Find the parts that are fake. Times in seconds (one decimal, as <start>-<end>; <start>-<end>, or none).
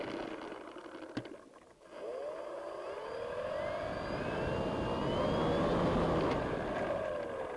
none